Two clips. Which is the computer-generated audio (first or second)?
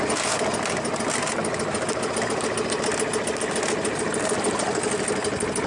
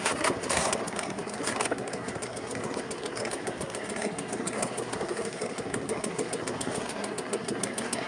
second